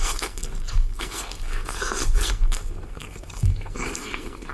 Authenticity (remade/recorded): remade